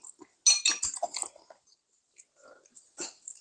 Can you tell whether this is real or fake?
real